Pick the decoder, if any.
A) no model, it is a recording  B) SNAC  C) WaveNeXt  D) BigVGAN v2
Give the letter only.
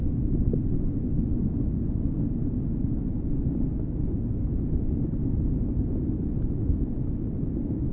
A